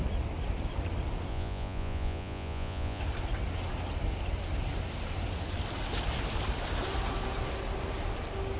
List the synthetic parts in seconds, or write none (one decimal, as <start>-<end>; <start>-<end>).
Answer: 1.3-3.0